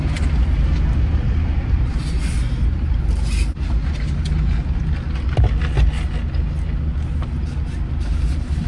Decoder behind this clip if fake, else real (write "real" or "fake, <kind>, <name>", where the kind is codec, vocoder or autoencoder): real